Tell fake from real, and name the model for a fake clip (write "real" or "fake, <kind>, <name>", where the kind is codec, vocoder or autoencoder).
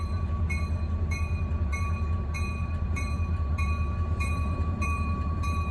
fake, vocoder, BigVGAN v2